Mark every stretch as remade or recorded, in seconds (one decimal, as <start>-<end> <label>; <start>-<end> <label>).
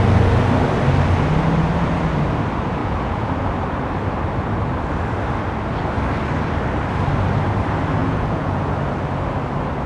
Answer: 0.0-2.8 recorded; 2.8-3.3 remade; 3.3-8.0 recorded; 8.0-8.6 remade; 8.6-9.9 recorded